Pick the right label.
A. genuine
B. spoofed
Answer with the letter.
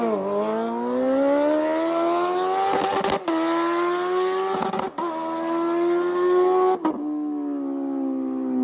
A